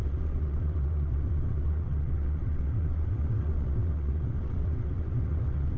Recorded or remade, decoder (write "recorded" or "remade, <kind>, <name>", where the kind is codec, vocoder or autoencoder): remade, vocoder, WaveNeXt